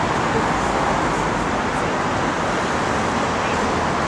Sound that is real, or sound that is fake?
real